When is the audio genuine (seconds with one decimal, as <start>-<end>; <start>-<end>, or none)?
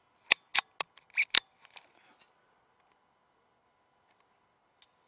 0.0-5.1